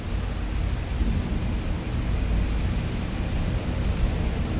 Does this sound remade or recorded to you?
recorded